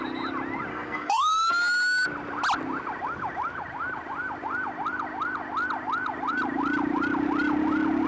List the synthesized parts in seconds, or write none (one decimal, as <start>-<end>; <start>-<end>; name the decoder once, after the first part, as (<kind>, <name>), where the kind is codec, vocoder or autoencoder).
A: 0.7-1.5 (codec, SNAC)